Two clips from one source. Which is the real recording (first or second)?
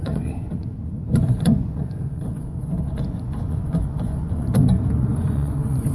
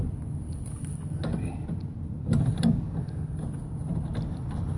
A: second